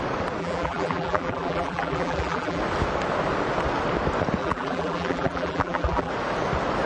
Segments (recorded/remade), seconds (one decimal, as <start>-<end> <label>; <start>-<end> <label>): 0.0-0.4 recorded; 0.4-2.6 remade; 2.6-4.4 recorded; 4.4-6.1 remade; 6.1-6.9 recorded